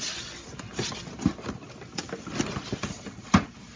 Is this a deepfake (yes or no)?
no